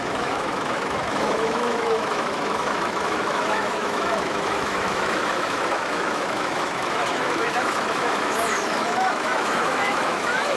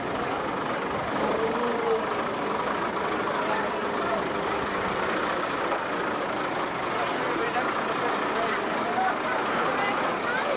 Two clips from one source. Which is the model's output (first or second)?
first